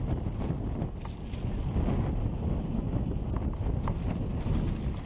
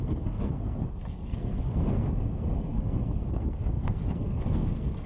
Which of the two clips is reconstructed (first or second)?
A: second